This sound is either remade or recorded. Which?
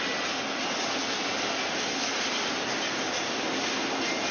recorded